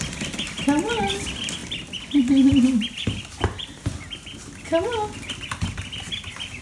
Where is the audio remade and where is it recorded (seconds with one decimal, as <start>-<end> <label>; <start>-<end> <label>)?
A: 0.0-6.6 recorded